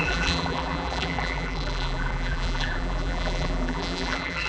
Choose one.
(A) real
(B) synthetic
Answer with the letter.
B